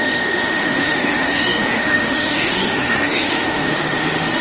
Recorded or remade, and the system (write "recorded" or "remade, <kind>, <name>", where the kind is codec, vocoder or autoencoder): remade, autoencoder, DAC-VAE